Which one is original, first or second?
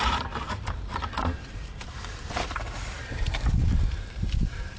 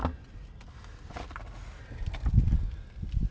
second